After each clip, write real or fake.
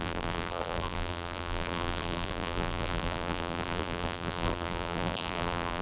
fake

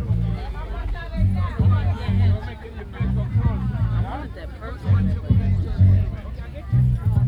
real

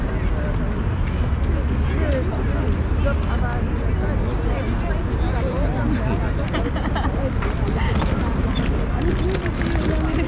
real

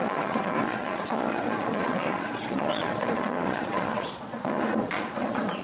fake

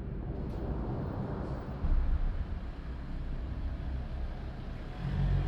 real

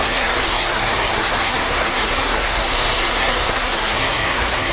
fake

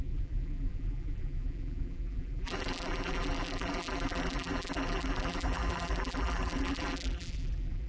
fake